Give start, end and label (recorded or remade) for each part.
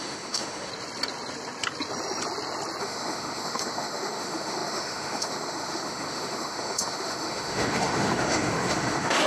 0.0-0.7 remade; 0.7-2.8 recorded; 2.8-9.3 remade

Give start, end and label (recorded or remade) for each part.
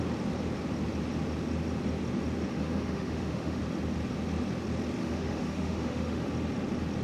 0.0-2.5 recorded; 2.5-3.6 remade; 3.6-5.0 recorded; 5.0-6.3 remade; 6.3-7.0 recorded